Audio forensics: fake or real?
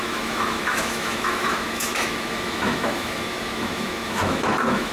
fake